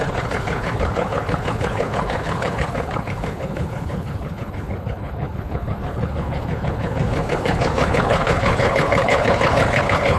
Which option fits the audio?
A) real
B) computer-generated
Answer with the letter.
B